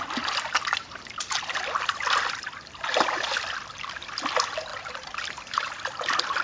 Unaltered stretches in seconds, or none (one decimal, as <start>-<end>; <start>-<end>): 0.0-4.7; 5.7-6.4